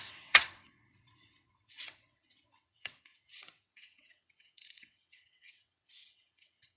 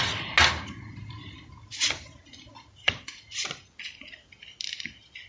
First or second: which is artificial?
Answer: first